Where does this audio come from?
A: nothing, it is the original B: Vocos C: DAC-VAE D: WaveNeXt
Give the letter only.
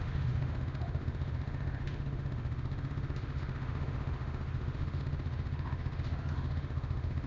C